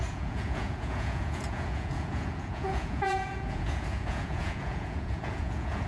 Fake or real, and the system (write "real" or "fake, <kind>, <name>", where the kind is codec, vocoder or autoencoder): fake, vocoder, Vocos